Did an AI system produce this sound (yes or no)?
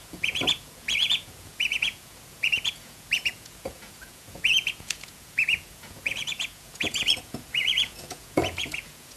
yes